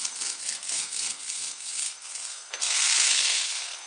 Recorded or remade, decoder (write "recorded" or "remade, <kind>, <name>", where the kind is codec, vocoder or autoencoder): remade, codec, SNAC